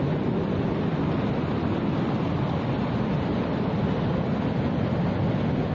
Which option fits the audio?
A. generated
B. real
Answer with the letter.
B